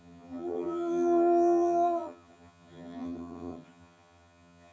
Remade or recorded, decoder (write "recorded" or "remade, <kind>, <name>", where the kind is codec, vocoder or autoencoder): remade, vocoder, HiFi-GAN